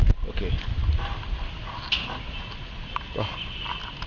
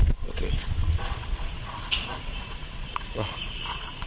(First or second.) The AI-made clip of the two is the second